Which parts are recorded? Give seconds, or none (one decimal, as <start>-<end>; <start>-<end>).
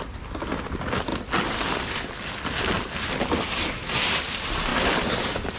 0.0-4.7